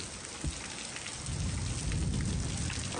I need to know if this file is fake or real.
real